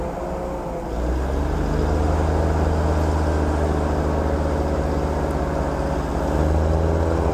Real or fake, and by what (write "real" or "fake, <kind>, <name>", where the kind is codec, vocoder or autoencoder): real